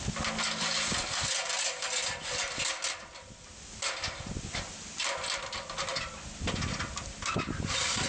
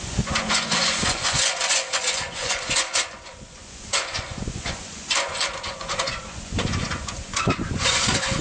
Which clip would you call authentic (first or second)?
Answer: first